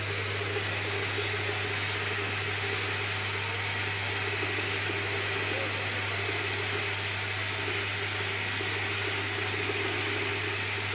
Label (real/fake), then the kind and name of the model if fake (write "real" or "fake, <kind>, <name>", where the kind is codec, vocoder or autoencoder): real